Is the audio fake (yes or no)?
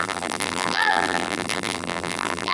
yes